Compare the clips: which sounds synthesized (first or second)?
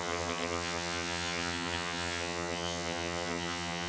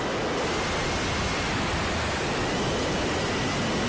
first